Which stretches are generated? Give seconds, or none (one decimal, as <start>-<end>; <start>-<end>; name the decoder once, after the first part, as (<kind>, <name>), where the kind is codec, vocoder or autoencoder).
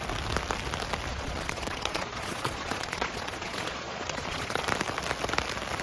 1.1-4.6 (vocoder, Vocos)